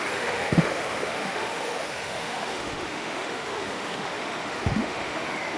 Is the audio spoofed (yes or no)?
yes